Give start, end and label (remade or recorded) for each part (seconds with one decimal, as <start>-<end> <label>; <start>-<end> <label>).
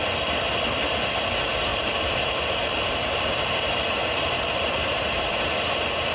0.0-1.7 recorded; 1.7-5.4 remade; 5.4-6.1 recorded